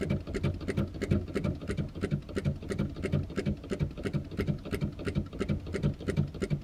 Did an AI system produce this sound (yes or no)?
no